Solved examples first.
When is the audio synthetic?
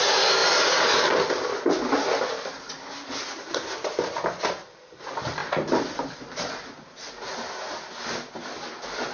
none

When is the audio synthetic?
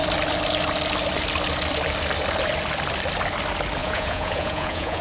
3.8-5.0 (vocoder, Vocos)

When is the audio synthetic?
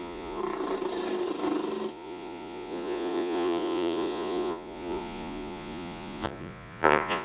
0.0-0.4 (vocoder, Vocos); 1.9-7.2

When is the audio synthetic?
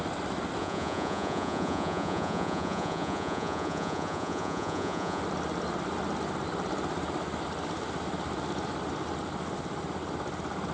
0.6-5.2 (vocoder, Vocos)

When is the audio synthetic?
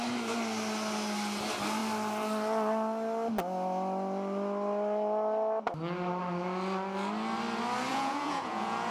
7.9-8.9 (vocoder, Vocos)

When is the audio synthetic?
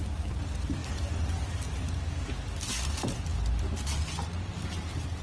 none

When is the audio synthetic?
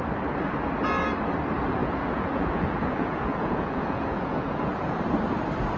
1.8-5.0 (vocoder, Vocos)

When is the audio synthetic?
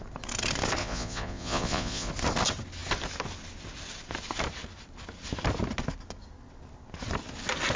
0.8-2.1 (vocoder, Vocos)